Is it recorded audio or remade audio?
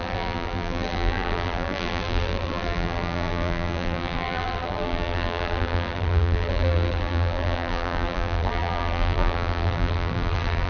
remade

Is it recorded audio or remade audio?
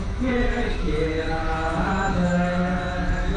remade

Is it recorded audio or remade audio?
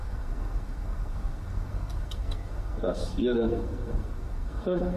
remade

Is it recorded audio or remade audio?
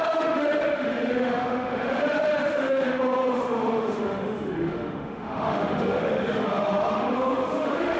remade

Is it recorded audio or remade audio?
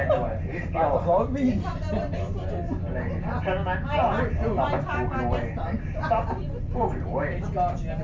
recorded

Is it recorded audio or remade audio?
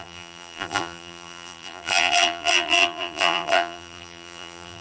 remade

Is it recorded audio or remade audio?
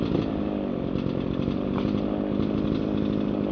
recorded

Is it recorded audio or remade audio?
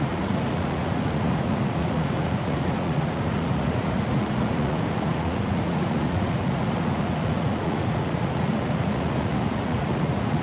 remade